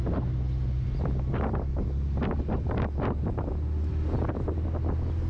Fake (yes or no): no